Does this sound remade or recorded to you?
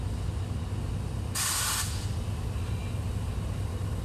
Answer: recorded